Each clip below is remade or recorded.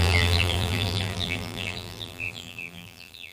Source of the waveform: remade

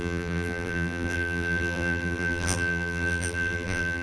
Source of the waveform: remade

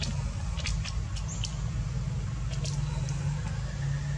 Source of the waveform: recorded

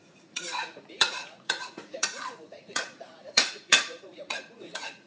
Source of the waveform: remade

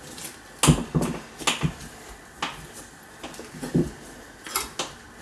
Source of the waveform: recorded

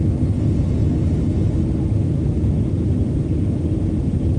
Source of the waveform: recorded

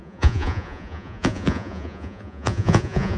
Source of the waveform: remade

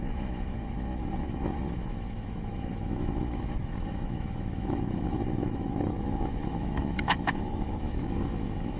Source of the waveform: remade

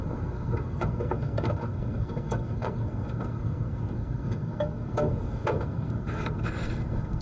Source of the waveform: remade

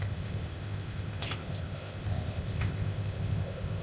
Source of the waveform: remade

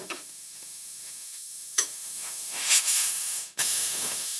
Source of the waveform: remade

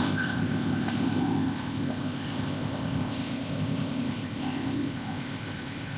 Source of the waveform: remade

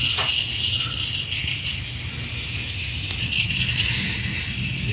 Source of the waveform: recorded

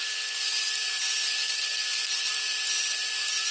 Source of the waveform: recorded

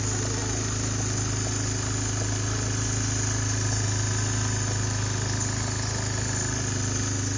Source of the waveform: recorded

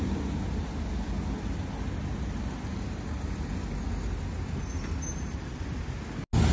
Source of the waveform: recorded